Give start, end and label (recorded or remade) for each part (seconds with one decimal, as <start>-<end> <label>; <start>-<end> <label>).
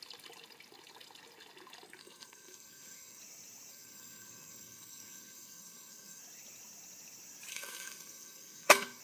0.0-2.0 recorded; 2.0-3.2 remade; 3.2-3.7 recorded; 3.7-6.2 remade; 6.2-7.5 recorded; 7.5-9.0 remade